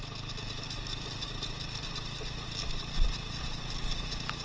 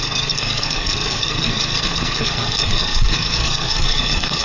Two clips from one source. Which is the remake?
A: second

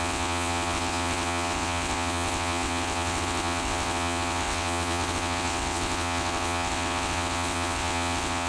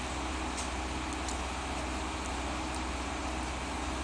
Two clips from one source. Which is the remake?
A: first